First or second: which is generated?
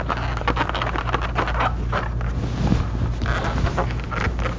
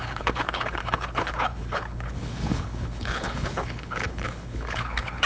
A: second